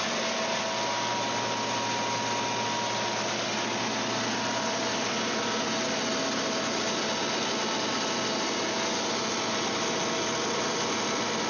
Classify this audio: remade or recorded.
recorded